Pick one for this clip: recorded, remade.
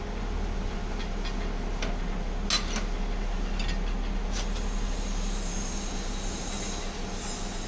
recorded